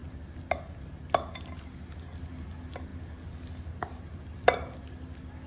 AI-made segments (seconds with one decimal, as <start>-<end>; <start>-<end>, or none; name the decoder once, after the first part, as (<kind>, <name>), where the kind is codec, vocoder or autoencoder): none